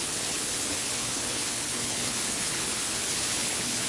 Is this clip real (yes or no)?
no